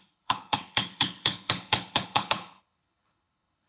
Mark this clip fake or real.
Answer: fake